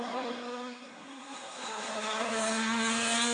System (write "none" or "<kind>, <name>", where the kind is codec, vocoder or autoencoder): codec, SNAC